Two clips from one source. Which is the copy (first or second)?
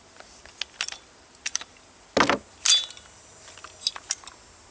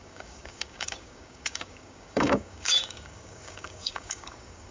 second